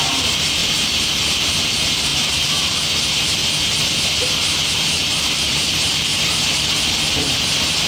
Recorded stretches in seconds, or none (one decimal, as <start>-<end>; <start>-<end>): 3.4-4.7; 6.1-7.9